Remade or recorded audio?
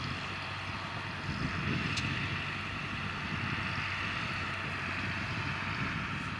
recorded